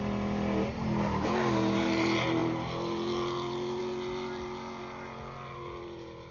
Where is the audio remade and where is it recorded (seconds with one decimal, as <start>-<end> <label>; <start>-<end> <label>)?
0.0-6.3 recorded